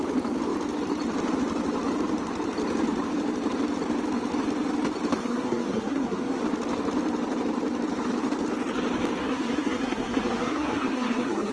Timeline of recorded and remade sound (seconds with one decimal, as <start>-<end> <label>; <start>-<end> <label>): 0.0-5.2 recorded; 5.2-6.4 remade; 6.4-9.2 recorded; 9.2-11.5 remade